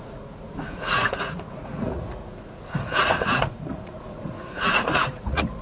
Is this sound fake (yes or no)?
yes